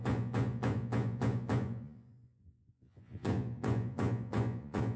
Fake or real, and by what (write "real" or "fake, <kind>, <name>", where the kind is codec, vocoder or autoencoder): fake, vocoder, Vocos